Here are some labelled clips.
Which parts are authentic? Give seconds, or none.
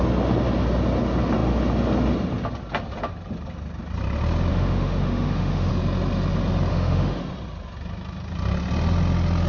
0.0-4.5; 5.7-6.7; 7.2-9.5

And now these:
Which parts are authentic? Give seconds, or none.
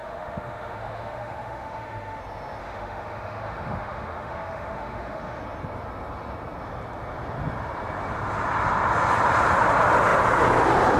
2.2-2.6; 5.4-11.0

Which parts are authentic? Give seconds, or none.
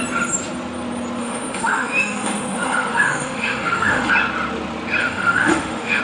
0.0-1.2; 4.1-5.0